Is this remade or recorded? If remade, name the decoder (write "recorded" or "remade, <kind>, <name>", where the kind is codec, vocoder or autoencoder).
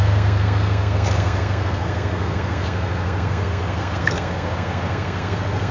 remade, codec, SNAC